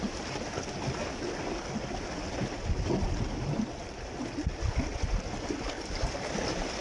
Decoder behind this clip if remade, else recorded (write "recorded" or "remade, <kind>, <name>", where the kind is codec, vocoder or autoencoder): recorded